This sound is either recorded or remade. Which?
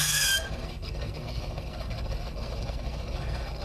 remade